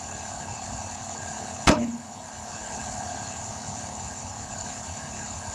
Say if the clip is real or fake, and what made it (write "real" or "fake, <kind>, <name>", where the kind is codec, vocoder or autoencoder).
fake, codec, HILCodec